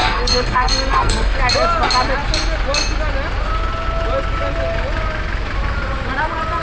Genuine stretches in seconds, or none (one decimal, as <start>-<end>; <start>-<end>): 1.4-6.6